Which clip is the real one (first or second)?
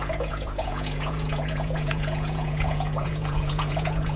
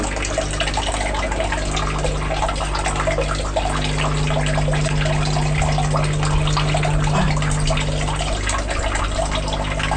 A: second